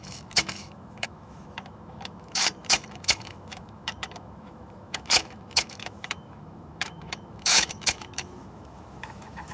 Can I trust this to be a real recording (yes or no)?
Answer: no